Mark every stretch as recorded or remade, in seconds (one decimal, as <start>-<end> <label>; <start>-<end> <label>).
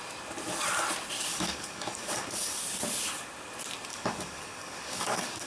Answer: 0.0-1.3 recorded; 1.3-2.6 remade; 2.6-3.9 recorded; 3.9-5.5 remade